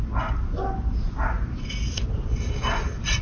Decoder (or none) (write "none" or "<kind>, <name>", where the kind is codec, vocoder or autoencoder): none